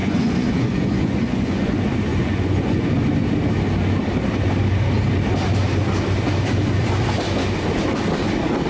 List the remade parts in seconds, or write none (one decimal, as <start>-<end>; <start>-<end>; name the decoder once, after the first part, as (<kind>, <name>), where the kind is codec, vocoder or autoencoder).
0.0-1.7 (vocoder, Vocos); 2.1-2.9